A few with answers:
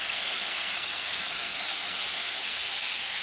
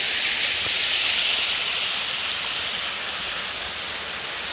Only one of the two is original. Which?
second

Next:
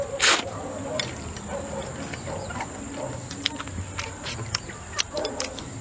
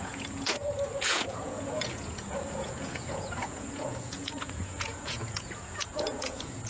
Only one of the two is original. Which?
first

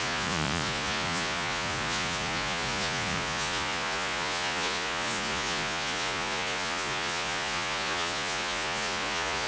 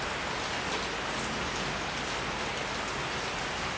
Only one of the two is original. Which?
second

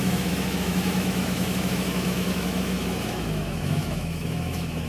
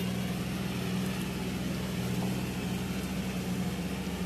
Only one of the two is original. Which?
second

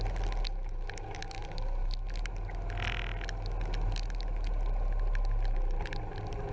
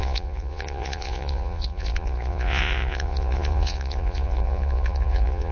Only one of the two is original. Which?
first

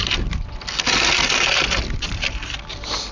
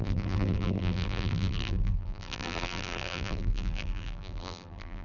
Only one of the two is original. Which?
first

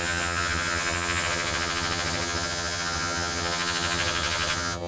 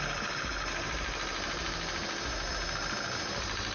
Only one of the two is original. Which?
second